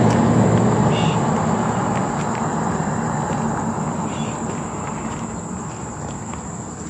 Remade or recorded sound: recorded